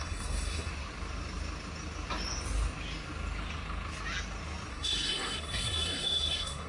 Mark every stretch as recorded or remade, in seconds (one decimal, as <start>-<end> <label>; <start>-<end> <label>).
0.0-0.7 remade; 0.7-4.7 recorded; 4.7-6.7 remade